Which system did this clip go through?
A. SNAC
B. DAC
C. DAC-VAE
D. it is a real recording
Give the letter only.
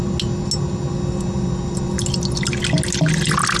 D